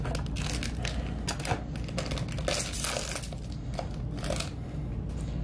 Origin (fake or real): real